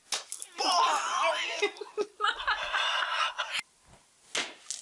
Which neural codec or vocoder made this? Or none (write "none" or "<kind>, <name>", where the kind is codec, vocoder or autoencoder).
none